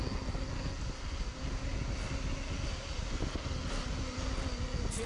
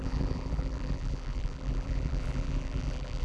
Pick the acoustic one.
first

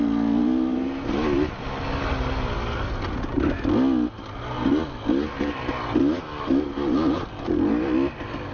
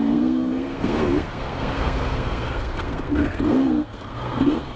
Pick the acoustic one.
first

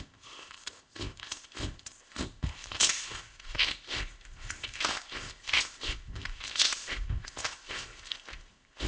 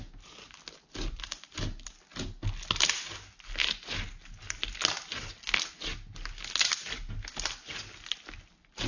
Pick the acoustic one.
second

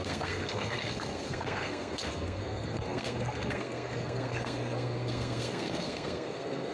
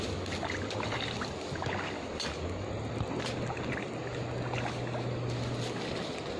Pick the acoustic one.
second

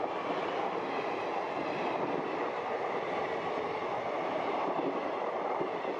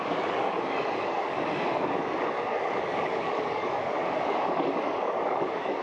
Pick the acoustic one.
first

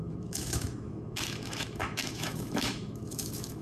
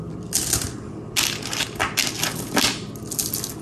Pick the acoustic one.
second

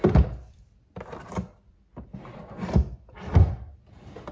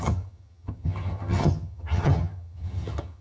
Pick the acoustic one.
first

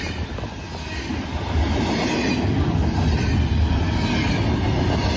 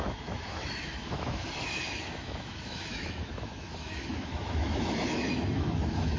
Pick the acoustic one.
first